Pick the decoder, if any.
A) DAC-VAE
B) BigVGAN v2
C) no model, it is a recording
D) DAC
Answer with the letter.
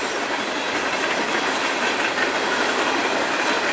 C